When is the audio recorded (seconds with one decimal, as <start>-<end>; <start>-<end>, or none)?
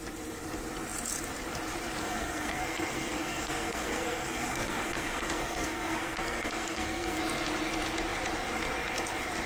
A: 0.0-2.0; 7.2-9.5